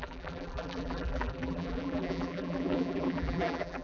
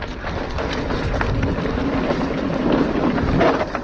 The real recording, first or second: second